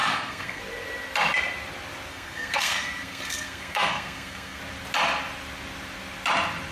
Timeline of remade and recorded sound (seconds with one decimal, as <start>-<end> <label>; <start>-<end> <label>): 0.0-0.6 remade; 0.6-2.1 recorded; 2.1-4.6 remade; 4.6-6.7 recorded